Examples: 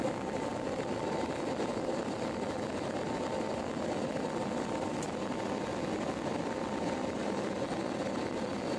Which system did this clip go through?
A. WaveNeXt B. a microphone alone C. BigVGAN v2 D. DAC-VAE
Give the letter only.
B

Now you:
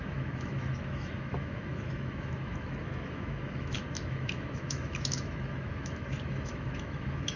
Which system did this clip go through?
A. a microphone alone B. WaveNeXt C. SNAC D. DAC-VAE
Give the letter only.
D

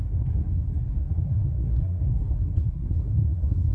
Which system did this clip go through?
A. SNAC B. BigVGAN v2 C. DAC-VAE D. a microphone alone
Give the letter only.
A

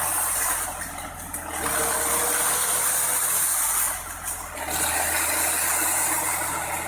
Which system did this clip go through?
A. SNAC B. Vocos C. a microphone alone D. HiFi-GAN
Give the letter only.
C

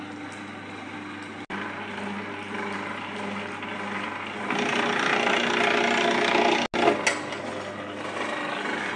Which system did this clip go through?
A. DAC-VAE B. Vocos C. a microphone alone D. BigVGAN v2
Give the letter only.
C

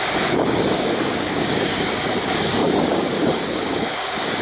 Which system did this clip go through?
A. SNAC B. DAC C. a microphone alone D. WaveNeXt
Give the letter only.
B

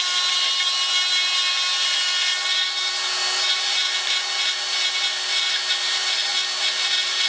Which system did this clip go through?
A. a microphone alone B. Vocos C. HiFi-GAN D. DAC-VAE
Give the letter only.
A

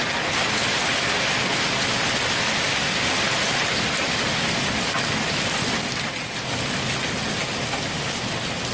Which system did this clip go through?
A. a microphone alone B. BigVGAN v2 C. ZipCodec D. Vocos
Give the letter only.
A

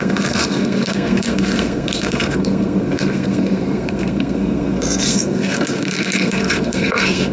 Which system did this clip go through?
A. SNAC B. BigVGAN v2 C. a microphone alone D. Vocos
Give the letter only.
A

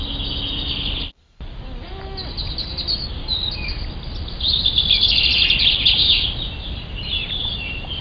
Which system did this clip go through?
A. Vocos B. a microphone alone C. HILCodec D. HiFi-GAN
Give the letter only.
B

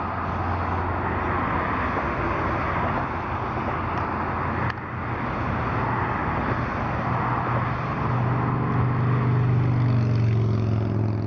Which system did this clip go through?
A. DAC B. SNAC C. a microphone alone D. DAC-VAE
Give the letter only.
C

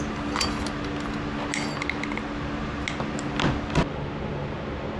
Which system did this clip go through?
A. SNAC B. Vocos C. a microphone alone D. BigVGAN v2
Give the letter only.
C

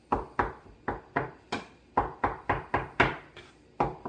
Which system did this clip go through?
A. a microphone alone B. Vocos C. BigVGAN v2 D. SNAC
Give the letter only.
A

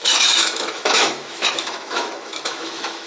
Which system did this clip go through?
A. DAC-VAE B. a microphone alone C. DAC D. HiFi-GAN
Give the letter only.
A